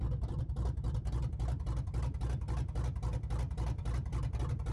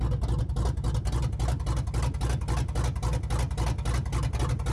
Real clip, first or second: second